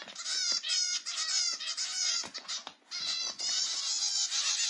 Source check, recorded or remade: remade